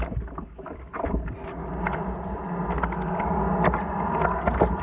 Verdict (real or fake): real